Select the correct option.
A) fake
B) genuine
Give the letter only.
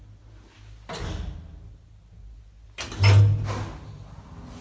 B